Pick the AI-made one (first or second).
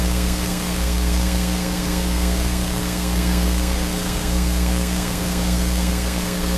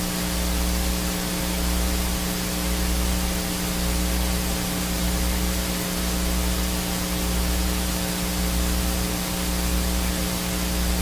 first